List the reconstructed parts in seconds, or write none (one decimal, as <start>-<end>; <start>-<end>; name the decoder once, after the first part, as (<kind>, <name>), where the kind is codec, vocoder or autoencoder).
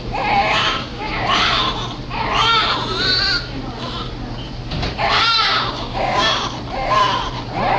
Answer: 0.4-1.3 (codec, DAC); 5.5-6.3